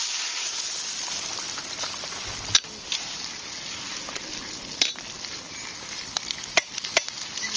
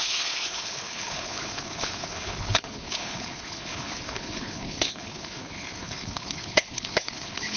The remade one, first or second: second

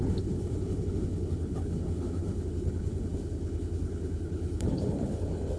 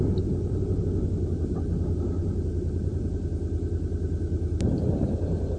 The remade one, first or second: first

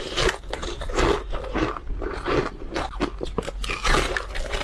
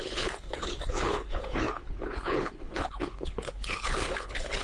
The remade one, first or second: second